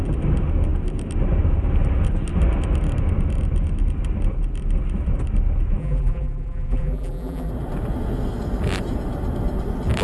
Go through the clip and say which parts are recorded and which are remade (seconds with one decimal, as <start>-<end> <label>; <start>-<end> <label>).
0.0-5.8 recorded; 5.8-7.5 remade; 7.5-10.0 recorded